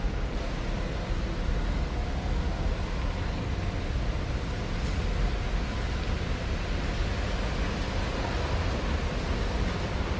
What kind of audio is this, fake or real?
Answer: real